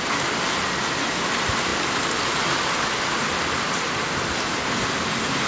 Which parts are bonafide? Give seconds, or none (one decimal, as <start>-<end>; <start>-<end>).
0.0-5.5